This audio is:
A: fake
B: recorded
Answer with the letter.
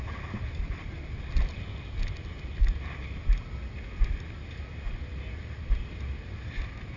B